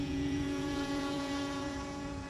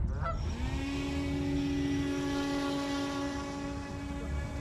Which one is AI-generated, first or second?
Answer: first